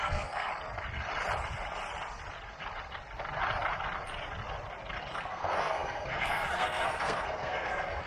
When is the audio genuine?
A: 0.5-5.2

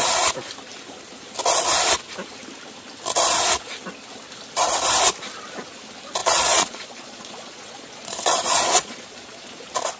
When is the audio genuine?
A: 0.0-6.2; 9.5-10.0

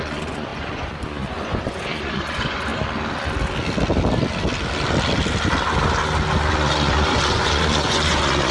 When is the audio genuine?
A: 2.7-6.5

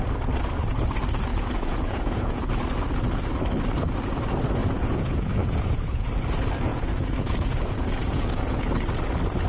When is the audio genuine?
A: 0.0-1.3; 2.4-4.6; 6.1-6.7; 8.6-9.5

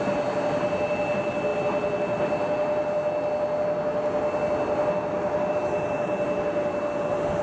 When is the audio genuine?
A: 0.0-7.4